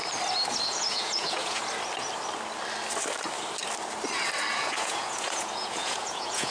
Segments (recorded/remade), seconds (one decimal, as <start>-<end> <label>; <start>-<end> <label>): 0.0-0.6 recorded; 0.6-1.6 remade; 1.6-4.5 recorded; 4.5-6.5 remade